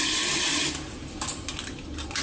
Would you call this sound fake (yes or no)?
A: no